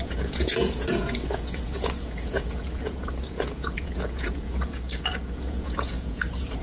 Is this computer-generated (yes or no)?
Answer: yes